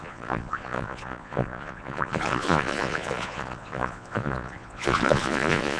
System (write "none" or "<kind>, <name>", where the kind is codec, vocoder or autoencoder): vocoder, Vocos